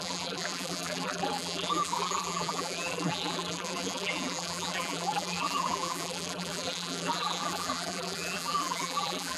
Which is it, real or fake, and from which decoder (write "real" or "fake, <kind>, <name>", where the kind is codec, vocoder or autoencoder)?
fake, vocoder, BigVGAN v2